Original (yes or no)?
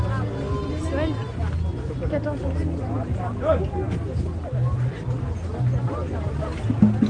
yes